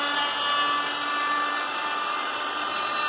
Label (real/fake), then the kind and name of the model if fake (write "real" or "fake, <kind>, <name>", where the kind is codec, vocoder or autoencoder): real